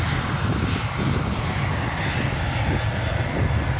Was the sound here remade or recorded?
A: recorded